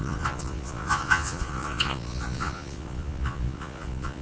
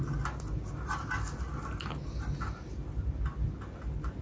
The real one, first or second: second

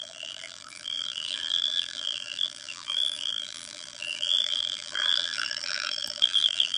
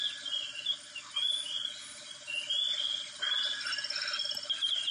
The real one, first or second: second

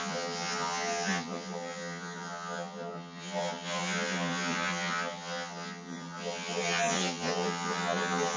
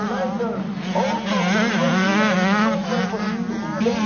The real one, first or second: second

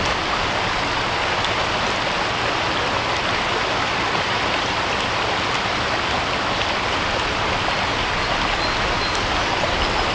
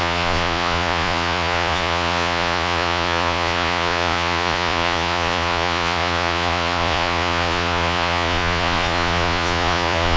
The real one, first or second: first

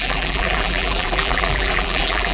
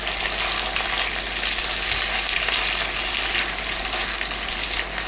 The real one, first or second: second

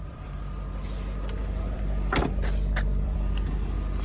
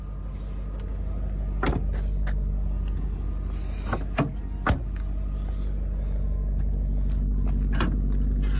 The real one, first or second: second